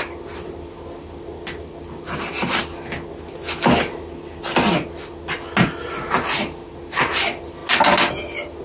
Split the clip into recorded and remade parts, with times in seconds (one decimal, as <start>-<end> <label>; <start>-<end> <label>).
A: 0.0-8.6 recorded